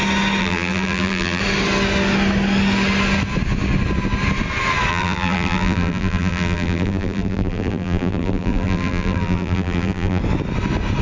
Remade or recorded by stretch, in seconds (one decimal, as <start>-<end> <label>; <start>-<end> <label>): 0.0-0.4 recorded; 0.4-1.4 remade; 1.4-4.9 recorded; 4.9-10.2 remade; 10.2-11.0 recorded